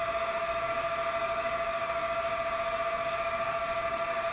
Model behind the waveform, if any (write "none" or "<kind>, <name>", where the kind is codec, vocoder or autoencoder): codec, DAC